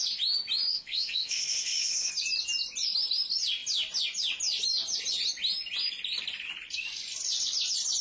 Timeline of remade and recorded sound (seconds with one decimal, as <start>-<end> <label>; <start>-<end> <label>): 0.0-0.7 recorded; 0.7-2.1 remade; 2.1-8.0 recorded